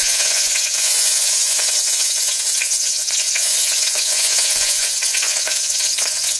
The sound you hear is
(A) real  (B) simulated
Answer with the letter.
B